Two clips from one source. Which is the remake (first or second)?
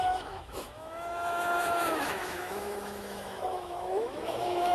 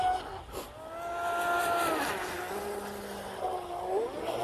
first